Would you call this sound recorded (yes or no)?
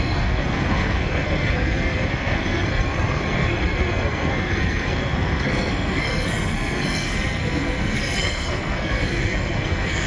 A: no